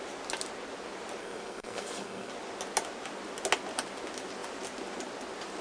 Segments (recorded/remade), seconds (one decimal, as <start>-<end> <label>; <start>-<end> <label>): 0.0-1.2 recorded; 1.2-2.3 remade; 2.3-5.6 recorded